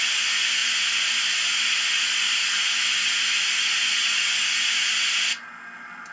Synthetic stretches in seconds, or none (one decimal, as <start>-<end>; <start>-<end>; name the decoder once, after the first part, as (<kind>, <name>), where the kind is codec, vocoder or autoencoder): none